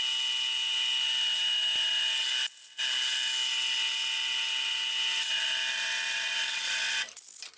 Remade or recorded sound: recorded